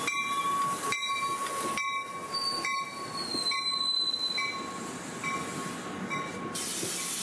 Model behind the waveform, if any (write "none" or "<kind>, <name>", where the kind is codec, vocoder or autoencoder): none